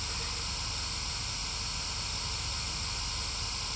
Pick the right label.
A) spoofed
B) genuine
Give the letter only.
B